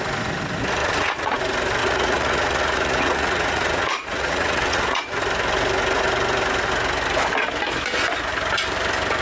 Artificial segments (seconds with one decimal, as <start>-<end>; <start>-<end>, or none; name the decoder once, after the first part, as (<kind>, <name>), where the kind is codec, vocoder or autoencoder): 0.8-1.4 (vocoder, Vocos); 1.8-5.2